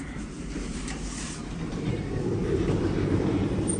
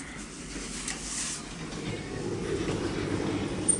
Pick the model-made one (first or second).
first